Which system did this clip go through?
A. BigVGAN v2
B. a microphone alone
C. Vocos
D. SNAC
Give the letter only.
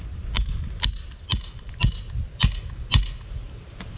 B